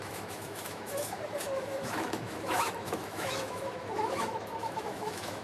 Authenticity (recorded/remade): remade